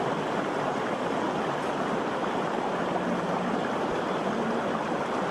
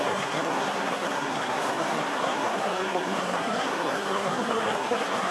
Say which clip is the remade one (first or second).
second